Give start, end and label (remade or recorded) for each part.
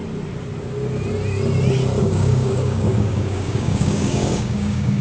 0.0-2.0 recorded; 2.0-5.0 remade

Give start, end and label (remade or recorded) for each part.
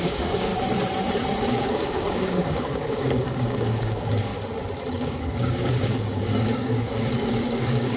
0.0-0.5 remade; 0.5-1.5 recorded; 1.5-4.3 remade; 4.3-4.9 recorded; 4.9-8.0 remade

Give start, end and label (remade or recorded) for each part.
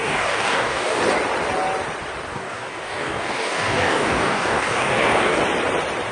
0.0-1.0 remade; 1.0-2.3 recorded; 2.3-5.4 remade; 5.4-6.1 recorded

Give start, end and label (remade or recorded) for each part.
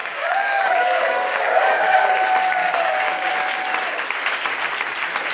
0.0-2.1 remade; 2.1-2.6 recorded; 2.6-3.3 remade; 3.3-5.3 recorded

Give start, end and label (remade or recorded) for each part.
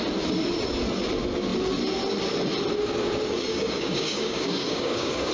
0.0-3.5 recorded; 3.5-5.3 remade